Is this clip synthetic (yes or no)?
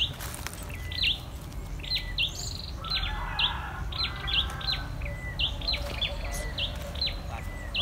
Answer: no